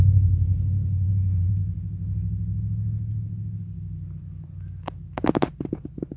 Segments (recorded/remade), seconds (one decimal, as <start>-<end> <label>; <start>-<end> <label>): 0.0-1.6 remade; 1.6-5.3 recorded; 5.3-6.2 remade